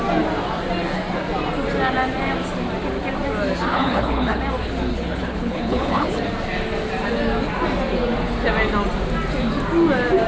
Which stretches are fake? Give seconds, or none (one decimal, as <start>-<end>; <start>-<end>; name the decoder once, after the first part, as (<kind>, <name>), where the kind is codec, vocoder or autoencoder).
3.7-4.4 (codec, HILCodec); 4.9-6.2